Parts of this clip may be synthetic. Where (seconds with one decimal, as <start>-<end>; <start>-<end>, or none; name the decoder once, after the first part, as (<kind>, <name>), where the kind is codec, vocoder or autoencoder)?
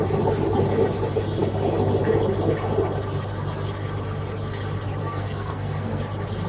5.0-6.0 (codec, SNAC)